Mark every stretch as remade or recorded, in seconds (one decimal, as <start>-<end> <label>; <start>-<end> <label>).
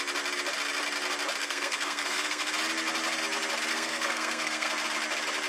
0.0-1.4 recorded; 1.4-2.5 remade; 2.5-3.7 recorded; 3.7-4.7 remade; 4.7-5.5 recorded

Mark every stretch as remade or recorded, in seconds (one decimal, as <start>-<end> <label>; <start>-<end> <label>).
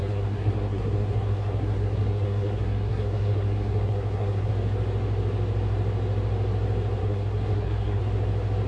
0.0-4.5 remade; 4.5-7.0 recorded; 7.0-8.0 remade; 8.0-8.7 recorded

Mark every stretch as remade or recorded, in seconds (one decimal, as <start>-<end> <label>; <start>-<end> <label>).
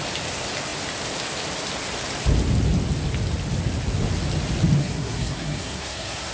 0.0-4.8 recorded; 4.8-6.3 remade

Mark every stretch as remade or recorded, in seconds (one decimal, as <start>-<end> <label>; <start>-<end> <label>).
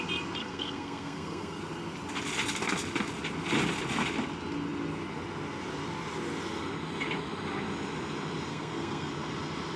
0.0-0.4 recorded; 0.4-1.6 remade; 1.6-8.5 recorded; 8.5-9.1 remade; 9.1-9.8 recorded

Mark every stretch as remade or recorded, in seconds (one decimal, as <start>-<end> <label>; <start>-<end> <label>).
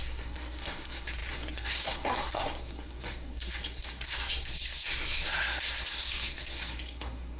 0.0-7.4 remade